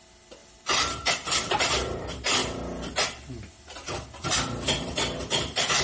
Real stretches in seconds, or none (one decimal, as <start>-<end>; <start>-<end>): 0.0-0.4; 1.7-5.8